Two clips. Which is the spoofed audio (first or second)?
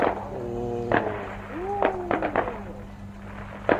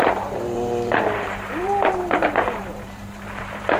second